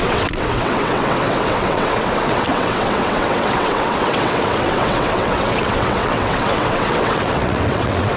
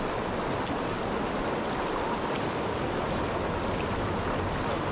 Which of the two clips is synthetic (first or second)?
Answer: first